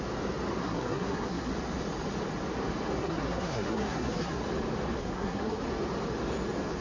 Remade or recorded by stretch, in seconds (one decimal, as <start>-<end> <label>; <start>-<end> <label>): 0.0-0.6 recorded; 0.6-1.5 remade; 1.5-3.0 recorded; 3.0-4.4 remade; 4.4-5.0 recorded; 5.0-5.6 remade; 5.6-6.8 recorded